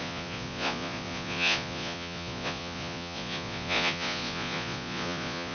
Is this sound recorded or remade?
remade